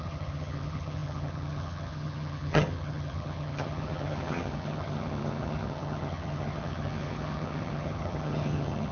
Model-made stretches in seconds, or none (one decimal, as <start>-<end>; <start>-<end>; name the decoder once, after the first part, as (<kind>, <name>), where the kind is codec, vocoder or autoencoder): 0.0-8.9 (vocoder, HiFi-GAN)